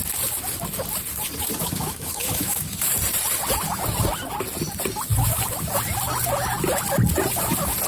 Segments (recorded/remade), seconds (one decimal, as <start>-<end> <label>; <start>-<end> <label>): 0.0-1.6 recorded; 1.6-3.0 remade; 3.0-7.9 recorded